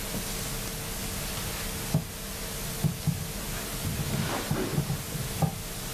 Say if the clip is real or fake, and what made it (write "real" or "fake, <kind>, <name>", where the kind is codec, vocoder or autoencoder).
real